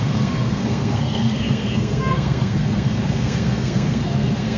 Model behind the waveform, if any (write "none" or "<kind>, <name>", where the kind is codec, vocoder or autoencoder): codec, SNAC